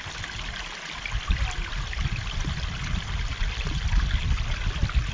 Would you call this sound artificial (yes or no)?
no